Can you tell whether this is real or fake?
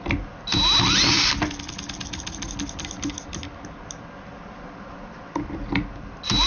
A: real